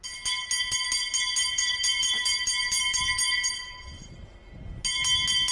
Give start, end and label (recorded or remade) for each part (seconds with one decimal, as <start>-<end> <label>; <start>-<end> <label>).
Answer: 0.0-1.4 recorded; 1.4-4.2 remade; 4.2-5.5 recorded